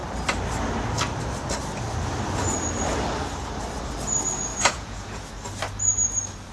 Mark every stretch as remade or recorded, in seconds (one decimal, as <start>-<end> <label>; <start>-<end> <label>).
0.0-4.5 recorded; 4.5-5.2 remade; 5.2-6.5 recorded